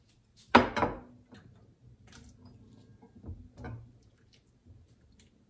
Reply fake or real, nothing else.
real